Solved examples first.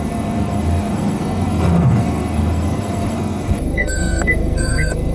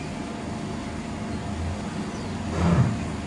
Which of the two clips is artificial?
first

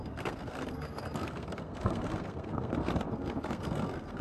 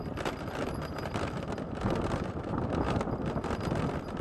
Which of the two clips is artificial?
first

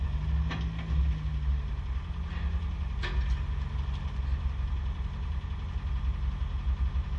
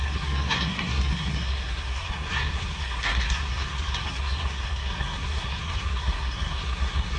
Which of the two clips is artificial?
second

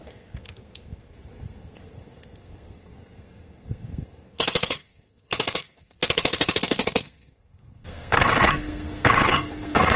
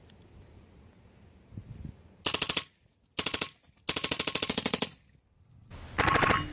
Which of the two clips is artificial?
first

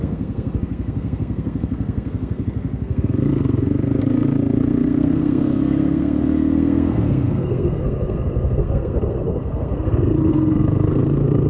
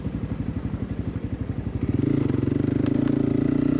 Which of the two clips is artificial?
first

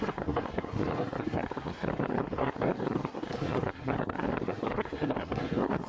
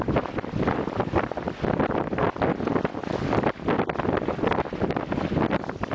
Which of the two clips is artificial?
first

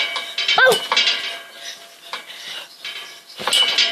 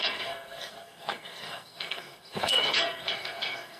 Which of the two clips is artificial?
second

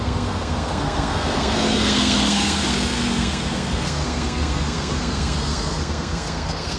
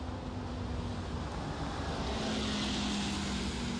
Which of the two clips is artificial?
first